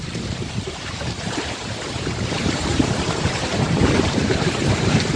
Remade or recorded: remade